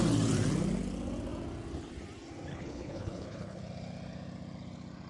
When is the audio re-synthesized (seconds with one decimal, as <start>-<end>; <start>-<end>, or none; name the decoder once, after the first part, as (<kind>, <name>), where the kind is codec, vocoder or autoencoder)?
2.5-3.6 (codec, HILCodec)